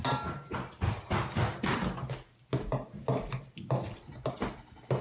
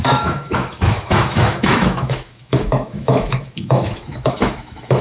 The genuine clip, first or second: first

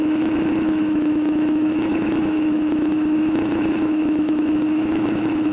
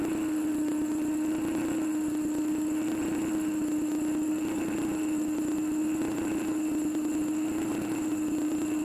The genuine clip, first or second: second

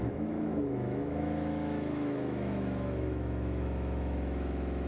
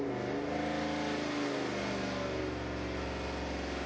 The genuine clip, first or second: second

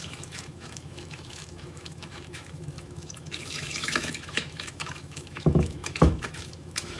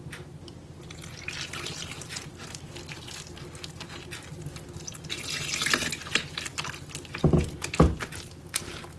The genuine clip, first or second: second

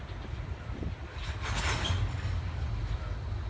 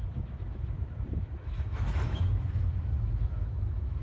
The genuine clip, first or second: first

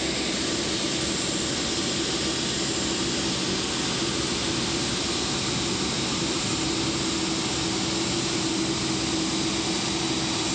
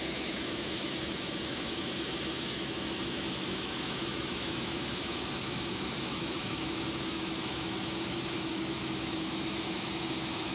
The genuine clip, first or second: first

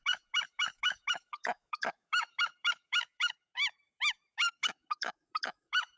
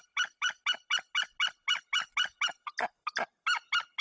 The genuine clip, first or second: second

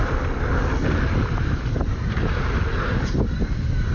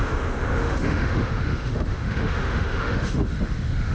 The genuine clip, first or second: first